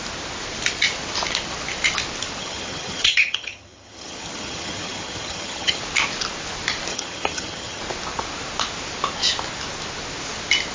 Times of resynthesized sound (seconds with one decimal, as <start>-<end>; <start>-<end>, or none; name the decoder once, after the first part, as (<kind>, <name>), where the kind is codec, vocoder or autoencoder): 2.4-5.8 (vocoder, HiFi-GAN); 6.9-7.8